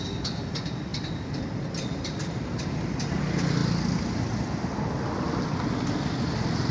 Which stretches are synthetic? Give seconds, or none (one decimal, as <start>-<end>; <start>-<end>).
0.9-3.2; 3.6-4.4